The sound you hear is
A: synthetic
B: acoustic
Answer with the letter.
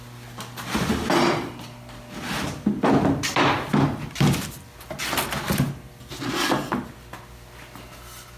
B